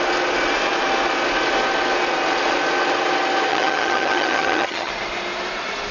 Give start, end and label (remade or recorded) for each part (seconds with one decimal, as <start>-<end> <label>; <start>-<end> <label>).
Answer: 0.0-3.5 recorded; 3.5-4.9 remade; 4.9-5.9 recorded